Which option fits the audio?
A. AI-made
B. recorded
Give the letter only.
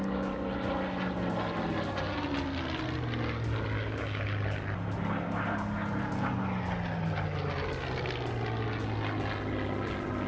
B